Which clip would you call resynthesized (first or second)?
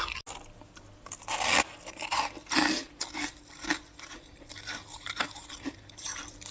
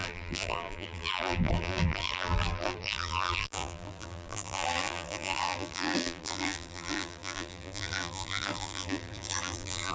second